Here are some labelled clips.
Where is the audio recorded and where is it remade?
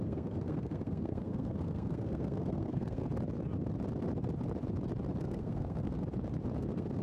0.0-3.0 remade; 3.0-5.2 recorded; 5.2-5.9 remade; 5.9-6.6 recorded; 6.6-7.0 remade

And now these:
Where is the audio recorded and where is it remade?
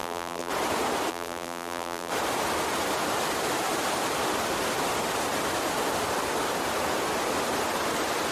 0.0-0.5 remade; 0.5-1.1 recorded; 1.1-2.1 remade; 2.1-8.3 recorded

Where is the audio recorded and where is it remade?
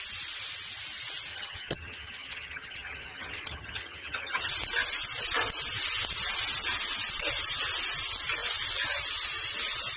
0.0-1.3 recorded; 1.3-4.5 remade; 4.5-10.0 recorded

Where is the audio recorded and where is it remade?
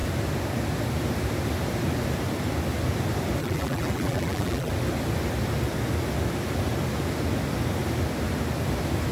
0.0-3.4 recorded; 3.4-4.7 remade; 4.7-9.1 recorded